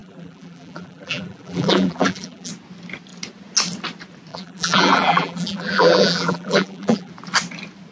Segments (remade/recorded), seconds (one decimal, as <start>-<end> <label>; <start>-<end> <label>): 0.0-2.5 remade; 2.5-4.3 recorded; 4.3-7.1 remade; 7.1-7.9 recorded